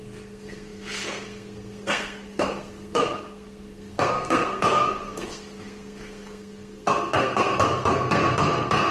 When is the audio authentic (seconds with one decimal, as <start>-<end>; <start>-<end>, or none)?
none